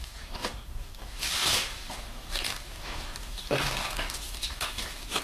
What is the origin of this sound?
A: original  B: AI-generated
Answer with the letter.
B